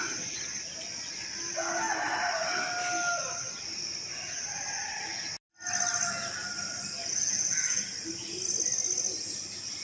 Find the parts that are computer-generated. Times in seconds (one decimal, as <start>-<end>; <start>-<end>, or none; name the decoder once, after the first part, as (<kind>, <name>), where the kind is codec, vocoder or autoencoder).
7.0-7.8 (vocoder, Vocos)